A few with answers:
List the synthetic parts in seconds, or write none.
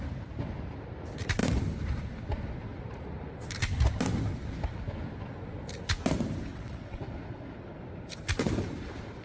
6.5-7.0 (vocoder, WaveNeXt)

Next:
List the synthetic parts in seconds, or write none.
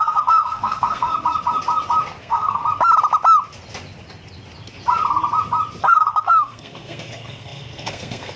0.0-1.1 (codec, SNAC); 2.2-2.6; 5.8-8.4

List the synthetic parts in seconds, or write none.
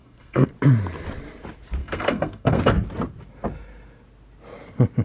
0.0-0.5 (codec, SNAC); 1.8-2.6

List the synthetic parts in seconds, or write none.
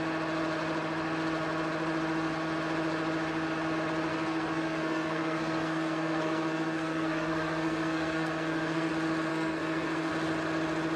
4.1-8.9 (codec, SNAC); 9.3-10.1